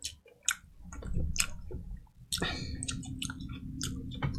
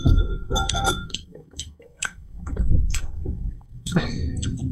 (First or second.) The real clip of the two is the first